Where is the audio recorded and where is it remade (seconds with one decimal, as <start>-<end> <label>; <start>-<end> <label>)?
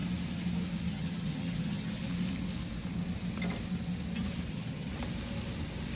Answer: 0.0-0.9 recorded; 0.9-2.0 remade; 2.0-4.5 recorded; 4.5-4.9 remade; 4.9-6.0 recorded